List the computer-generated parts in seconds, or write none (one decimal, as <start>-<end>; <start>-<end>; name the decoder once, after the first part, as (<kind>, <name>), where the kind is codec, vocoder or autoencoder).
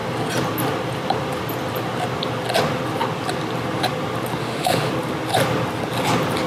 4.4-4.9 (autoencoder, DAC-VAE)